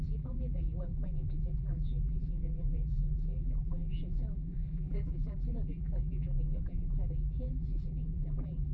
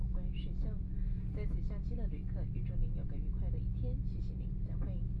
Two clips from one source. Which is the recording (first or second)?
second